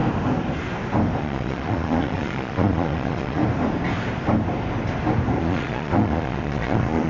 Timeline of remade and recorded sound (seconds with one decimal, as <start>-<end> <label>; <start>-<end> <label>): 0.0-1.2 recorded; 1.2-3.4 remade; 3.4-5.4 recorded; 5.4-7.1 remade